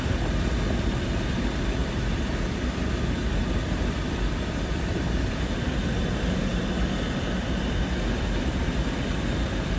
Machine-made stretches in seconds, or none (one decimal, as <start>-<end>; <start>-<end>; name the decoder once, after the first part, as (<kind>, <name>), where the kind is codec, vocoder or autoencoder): 1.8-6.1 (vocoder, BigVGAN v2); 6.5-9.8